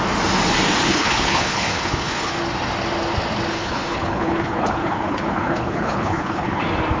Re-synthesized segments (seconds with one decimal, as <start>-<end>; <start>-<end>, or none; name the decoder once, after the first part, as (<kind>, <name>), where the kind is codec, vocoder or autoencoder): 0.9-2.4 (codec, HILCodec); 3.5-6.6